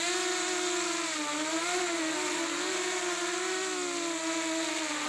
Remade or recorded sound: recorded